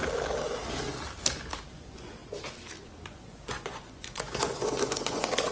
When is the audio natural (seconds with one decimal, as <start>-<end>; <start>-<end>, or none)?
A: 0.0-1.7; 2.2-2.8